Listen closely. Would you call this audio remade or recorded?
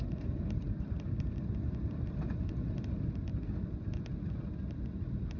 recorded